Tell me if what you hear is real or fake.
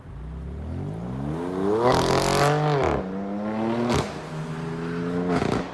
real